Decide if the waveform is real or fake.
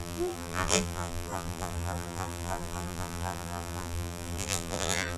fake